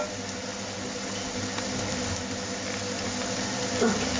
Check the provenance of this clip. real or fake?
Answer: real